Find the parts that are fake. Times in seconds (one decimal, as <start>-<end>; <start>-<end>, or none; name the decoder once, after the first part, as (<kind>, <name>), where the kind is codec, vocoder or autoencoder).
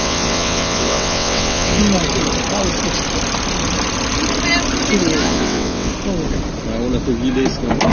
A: 0.0-1.8 (vocoder, WaveNeXt); 5.2-5.9